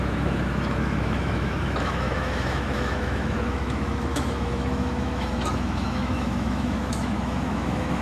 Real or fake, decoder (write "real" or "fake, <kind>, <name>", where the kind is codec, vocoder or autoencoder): fake, autoencoder, DAC-VAE